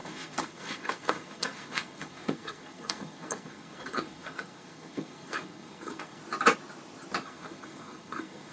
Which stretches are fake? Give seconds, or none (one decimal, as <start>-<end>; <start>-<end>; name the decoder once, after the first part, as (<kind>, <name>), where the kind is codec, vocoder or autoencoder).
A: 0.0-6.2 (codec, SNAC); 7.2-8.5